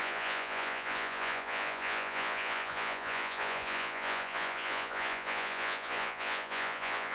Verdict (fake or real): fake